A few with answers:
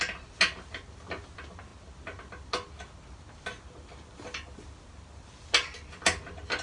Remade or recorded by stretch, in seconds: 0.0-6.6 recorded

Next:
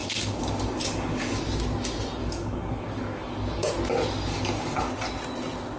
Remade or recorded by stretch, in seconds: 0.0-1.4 remade; 1.4-2.2 recorded; 2.2-3.7 remade; 3.7-4.3 recorded; 4.3-4.9 remade; 4.9-5.8 recorded

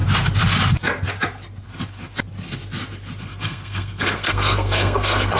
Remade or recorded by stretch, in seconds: 0.0-3.2 recorded; 3.2-5.4 remade

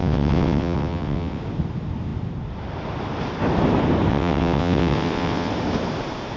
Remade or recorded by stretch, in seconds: 0.0-1.4 remade; 1.4-4.1 recorded; 4.1-5.5 remade; 5.5-6.4 recorded

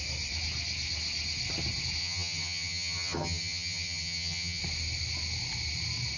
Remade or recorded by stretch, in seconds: 0.0-2.0 recorded; 2.0-4.6 remade; 4.6-6.2 recorded

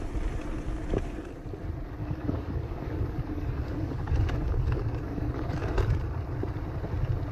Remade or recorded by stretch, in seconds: 0.0-2.0 recorded; 2.0-6.0 remade; 6.0-7.3 recorded

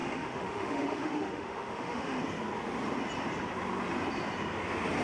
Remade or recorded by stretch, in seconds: 0.0-2.2 remade; 2.2-5.0 recorded

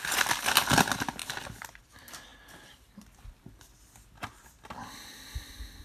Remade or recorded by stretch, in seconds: 0.0-5.8 recorded